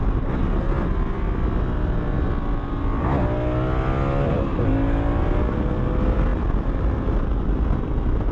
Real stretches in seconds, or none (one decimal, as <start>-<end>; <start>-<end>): 0.0-8.3